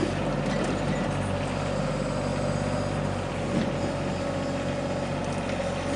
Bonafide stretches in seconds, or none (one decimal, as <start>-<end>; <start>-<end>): 0.0-6.0